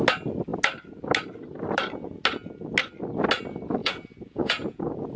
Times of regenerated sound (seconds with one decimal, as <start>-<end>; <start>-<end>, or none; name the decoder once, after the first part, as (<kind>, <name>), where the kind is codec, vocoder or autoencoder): 3.8-4.8 (vocoder, Vocos)